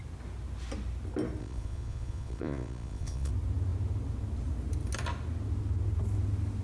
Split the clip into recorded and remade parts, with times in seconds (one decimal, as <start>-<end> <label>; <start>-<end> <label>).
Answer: 0.0-1.4 recorded; 1.4-3.3 remade; 3.3-6.6 recorded